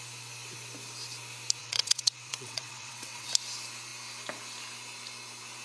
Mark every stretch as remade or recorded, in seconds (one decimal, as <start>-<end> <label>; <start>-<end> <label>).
0.0-1.6 recorded; 1.6-3.3 remade; 3.3-5.6 recorded